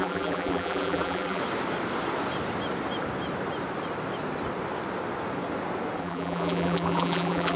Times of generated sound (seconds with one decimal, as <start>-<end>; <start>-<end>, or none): 0.0-1.4; 6.0-7.6